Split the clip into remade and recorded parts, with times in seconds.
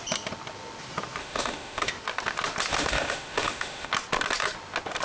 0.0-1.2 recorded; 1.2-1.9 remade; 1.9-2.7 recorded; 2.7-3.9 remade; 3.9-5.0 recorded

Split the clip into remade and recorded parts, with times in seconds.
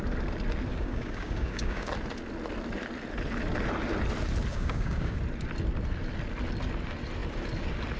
0.0-0.7 recorded; 0.7-1.9 remade; 1.9-4.5 recorded; 4.5-5.2 remade; 5.2-8.0 recorded